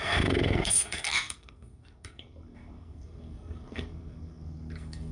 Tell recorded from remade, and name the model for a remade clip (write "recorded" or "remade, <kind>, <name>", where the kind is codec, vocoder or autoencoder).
remade, codec, SNAC